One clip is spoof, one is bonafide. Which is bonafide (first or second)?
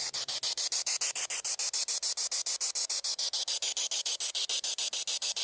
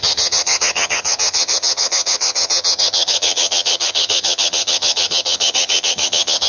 first